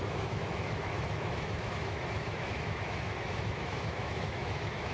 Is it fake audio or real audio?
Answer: fake